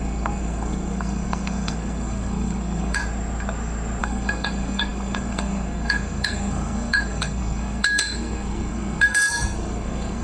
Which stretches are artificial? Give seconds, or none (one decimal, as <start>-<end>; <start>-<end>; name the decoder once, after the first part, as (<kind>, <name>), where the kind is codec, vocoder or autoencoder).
0.0-3.0 (codec, SNAC); 4.0-10.2

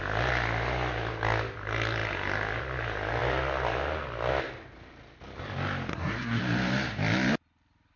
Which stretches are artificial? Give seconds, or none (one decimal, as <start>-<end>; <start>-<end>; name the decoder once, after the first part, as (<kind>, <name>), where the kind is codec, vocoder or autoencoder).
5.9-6.4 (codec, SNAC)

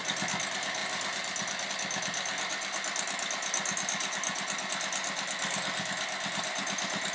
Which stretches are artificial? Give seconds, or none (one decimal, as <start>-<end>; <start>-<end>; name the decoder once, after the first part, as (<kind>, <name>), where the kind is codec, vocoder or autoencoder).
none

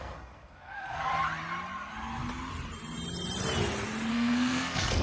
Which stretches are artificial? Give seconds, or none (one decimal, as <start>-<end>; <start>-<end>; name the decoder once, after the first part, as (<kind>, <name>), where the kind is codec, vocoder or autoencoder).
0.0-1.1 (codec, SNAC); 4.1-5.0